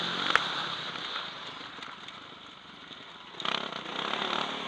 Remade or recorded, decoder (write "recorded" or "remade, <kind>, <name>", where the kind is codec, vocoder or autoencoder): recorded